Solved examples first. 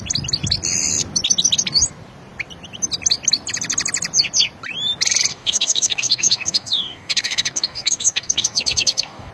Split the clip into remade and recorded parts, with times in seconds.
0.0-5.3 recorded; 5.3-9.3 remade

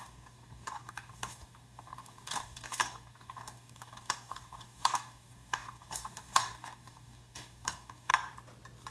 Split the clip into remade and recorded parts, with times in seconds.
0.0-8.1 remade; 8.1-8.9 recorded

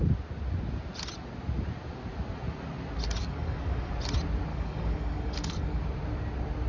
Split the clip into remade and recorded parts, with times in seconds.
0.0-3.2 recorded; 3.2-3.9 remade; 3.9-4.5 recorded; 4.5-5.8 remade; 5.8-6.7 recorded